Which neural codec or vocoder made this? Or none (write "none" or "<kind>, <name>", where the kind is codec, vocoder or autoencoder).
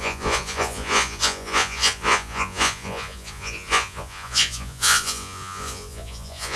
vocoder, Vocos